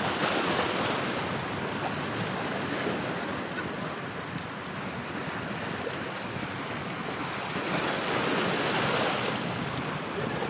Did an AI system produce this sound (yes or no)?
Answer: no